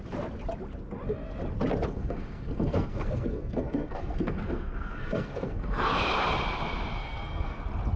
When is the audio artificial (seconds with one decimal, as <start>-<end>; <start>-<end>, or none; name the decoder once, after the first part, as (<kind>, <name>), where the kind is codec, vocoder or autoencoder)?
1.9-5.9 (codec, SNAC); 7.0-7.6